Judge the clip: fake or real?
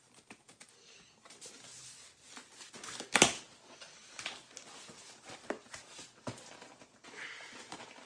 real